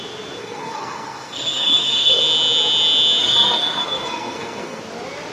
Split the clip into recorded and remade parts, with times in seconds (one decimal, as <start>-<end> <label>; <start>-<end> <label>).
0.0-0.4 recorded; 0.4-2.2 remade; 2.2-3.2 recorded; 3.2-4.8 remade; 4.8-5.3 recorded